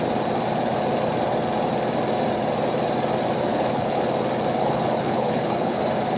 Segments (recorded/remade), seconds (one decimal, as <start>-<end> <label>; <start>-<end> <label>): 0.0-3.5 recorded; 3.5-4.0 remade; 4.0-4.6 recorded; 4.6-5.8 remade; 5.8-6.2 recorded